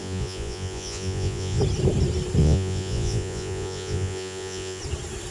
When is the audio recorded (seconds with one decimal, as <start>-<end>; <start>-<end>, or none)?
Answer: 1.6-2.4; 4.8-5.3